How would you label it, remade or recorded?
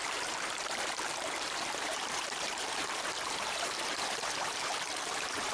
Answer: remade